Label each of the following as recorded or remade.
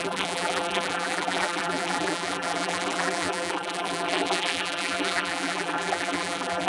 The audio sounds remade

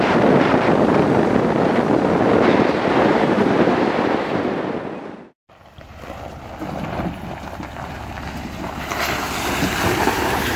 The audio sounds remade